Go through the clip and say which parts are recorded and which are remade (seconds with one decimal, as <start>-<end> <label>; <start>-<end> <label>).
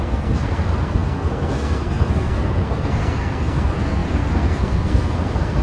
0.0-5.6 remade